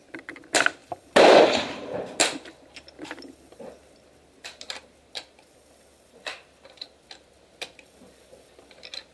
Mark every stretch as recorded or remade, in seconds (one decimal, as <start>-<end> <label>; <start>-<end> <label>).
0.0-9.1 recorded